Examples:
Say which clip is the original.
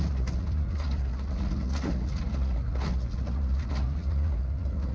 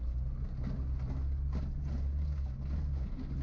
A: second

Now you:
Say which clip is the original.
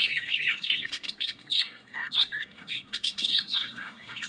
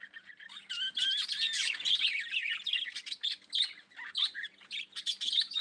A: second